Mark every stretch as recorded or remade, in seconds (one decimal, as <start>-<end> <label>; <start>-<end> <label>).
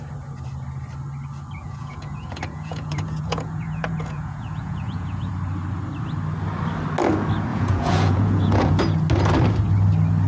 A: 0.0-1.6 recorded; 1.6-5.3 remade; 5.3-7.5 recorded; 7.5-8.8 remade; 8.8-10.3 recorded